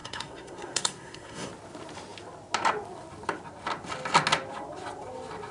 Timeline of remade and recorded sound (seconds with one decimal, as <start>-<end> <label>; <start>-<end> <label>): 0.0-1.5 remade; 1.5-5.5 recorded